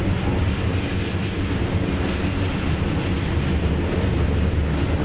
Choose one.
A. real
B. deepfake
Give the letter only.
A